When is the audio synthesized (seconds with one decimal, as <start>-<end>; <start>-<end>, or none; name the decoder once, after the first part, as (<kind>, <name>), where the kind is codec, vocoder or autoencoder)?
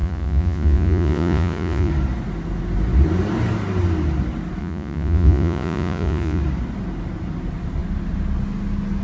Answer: 0.0-1.9 (vocoder, Vocos); 4.6-6.4